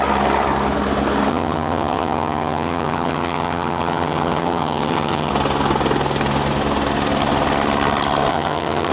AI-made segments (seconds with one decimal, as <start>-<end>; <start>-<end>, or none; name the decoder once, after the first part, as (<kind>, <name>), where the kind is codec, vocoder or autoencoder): 1.3-5.3 (vocoder, HiFi-GAN); 8.3-8.9